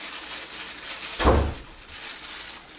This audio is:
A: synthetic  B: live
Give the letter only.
B